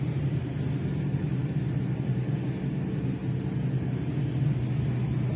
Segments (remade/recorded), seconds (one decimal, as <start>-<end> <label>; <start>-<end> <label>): 0.0-5.4 recorded